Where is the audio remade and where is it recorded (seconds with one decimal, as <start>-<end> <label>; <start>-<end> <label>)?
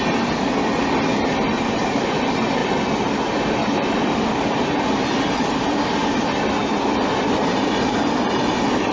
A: 0.0-8.9 recorded